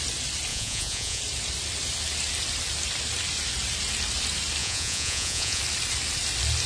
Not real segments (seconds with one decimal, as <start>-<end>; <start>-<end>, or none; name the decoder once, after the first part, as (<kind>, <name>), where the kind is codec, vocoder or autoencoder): 0.5-1.2 (vocoder, Vocos); 4.6-5.6